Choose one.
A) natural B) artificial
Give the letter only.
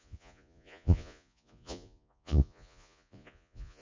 B